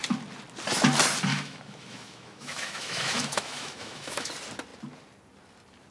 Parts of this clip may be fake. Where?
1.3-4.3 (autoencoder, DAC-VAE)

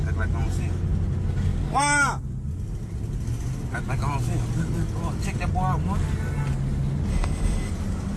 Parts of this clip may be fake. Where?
7.1-7.7 (autoencoder, DAC-VAE)

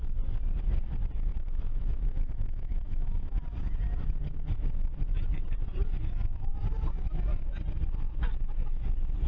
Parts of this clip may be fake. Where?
1.3-3.4 (autoencoder, DAC-VAE)